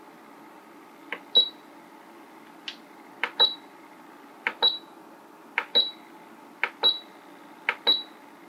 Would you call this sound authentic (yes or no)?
yes